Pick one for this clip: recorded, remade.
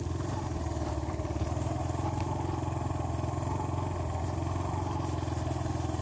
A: recorded